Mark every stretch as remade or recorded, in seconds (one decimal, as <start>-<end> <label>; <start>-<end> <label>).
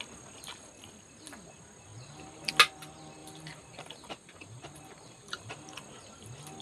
0.0-3.2 recorded; 3.2-5.5 remade; 5.5-6.6 recorded